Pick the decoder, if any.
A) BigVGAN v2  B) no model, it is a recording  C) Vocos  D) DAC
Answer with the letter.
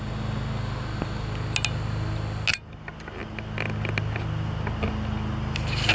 B